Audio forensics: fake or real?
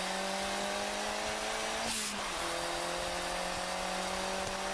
real